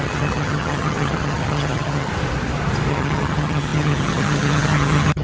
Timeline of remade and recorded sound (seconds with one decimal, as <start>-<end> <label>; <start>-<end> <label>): 0.0-2.1 remade; 2.1-2.9 recorded; 2.9-5.2 remade